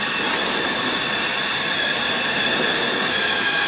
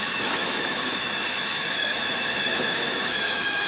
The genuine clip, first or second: first